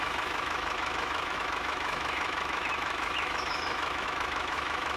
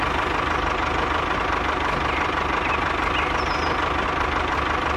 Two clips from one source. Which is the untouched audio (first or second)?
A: second